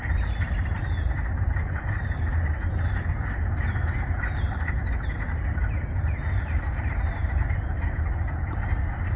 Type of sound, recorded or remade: recorded